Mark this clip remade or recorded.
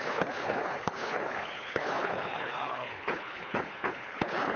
remade